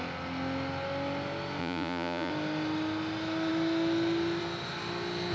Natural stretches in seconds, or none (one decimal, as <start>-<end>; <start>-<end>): 0.0-1.6; 2.3-5.3